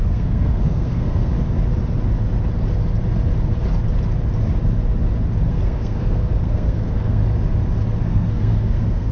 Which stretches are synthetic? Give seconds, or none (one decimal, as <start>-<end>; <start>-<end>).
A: 0.0-1.3; 5.5-7.2; 8.0-9.1